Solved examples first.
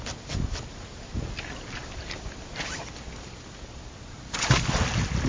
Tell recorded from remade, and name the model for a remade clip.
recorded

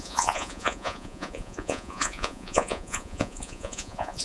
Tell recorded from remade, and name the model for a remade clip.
remade, vocoder, Vocos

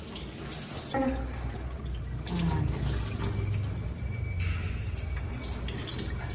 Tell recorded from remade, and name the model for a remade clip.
recorded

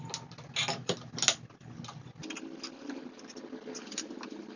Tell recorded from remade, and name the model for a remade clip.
recorded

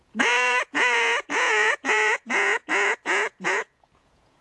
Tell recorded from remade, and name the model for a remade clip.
remade, vocoder, Vocos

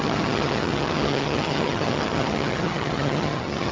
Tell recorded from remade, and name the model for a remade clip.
remade, vocoder, HiFi-GAN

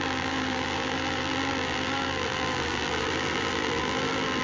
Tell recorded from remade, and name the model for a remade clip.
remade, vocoder, BigVGAN v2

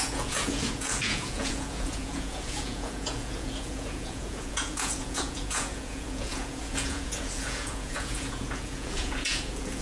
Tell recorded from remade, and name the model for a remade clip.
remade, vocoder, Vocos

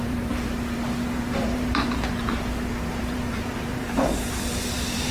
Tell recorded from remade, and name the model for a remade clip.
remade, vocoder, BigVGAN v2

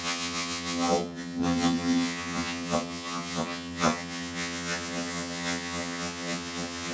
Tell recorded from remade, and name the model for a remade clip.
remade, vocoder, HiFi-GAN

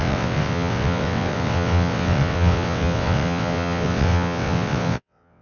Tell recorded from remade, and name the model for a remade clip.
remade, vocoder, WaveNeXt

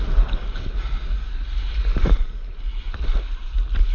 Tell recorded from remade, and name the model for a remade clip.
recorded